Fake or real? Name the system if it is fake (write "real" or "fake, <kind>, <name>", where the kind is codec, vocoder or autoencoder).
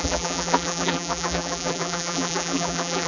fake, vocoder, BigVGAN v2